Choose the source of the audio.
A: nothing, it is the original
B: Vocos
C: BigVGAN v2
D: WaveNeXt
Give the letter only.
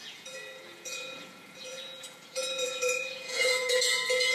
B